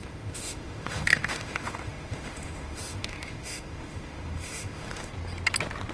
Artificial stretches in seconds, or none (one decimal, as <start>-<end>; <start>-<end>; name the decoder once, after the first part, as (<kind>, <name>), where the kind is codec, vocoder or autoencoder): 0.0-5.1 (autoencoder, DAC-VAE)